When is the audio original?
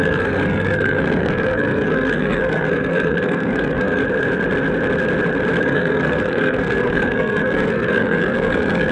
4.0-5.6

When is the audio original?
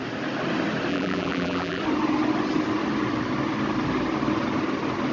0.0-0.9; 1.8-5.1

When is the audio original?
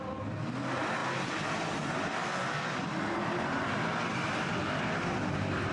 0.0-5.7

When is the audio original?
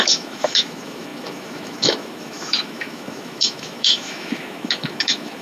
none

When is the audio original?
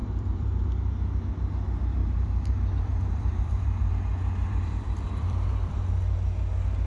0.7-2.0; 3.9-4.4; 5.8-6.9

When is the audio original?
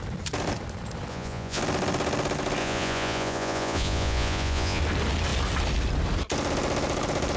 0.0-1.1; 1.6-2.6; 4.8-7.4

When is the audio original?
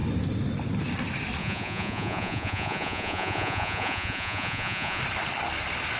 0.0-1.4; 5.0-6.0